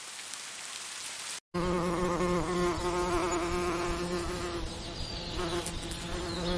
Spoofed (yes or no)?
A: no